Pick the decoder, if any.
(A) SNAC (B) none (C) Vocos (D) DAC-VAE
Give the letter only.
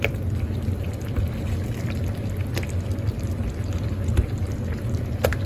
B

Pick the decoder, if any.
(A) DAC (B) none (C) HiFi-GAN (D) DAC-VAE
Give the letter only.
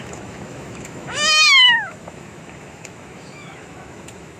D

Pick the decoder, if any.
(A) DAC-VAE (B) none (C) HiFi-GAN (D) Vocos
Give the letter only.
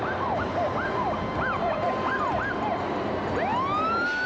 B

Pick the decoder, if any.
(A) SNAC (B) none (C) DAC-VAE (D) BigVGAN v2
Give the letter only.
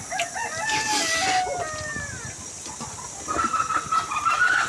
B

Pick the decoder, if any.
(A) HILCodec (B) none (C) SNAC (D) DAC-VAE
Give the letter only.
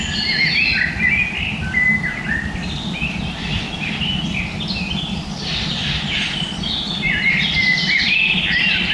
B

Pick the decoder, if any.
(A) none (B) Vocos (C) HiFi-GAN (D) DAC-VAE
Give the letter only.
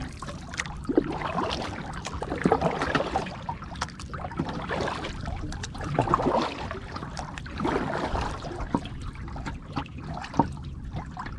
A